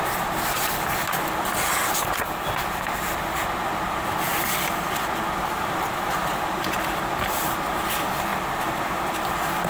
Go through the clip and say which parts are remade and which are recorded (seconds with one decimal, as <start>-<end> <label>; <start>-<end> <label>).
0.0-9.7 remade